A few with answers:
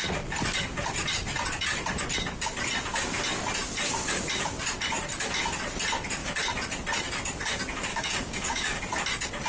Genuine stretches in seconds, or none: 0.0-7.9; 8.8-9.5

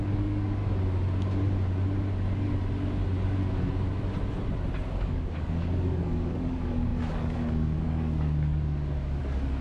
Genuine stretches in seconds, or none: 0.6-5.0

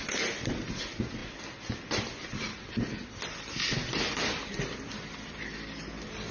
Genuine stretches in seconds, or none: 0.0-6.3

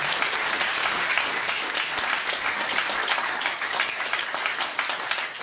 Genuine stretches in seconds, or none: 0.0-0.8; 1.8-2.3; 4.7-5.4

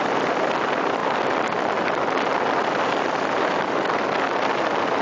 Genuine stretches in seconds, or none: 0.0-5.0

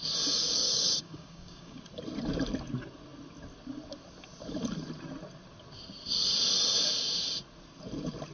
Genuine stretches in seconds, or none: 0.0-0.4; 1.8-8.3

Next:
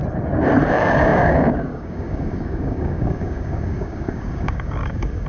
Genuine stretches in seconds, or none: 0.0-0.7

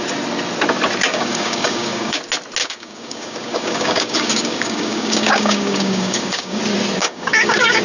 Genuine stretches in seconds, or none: 0.0-1.1; 2.2-2.6; 6.6-7.0